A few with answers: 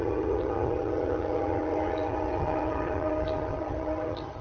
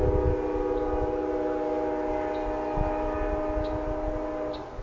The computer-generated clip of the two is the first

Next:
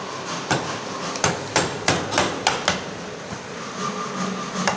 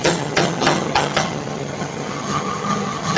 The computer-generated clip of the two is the second